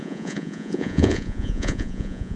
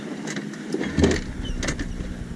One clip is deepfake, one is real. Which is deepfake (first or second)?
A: first